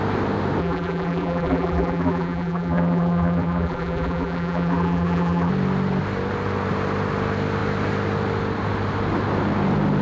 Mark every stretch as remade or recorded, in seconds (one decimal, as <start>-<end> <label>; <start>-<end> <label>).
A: 0.0-0.6 recorded; 0.6-5.5 remade; 5.5-10.0 recorded